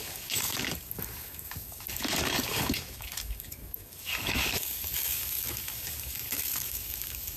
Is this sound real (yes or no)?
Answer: no